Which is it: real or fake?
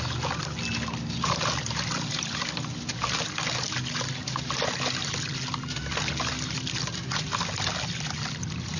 real